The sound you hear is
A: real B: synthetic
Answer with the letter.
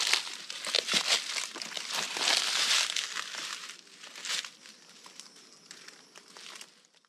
A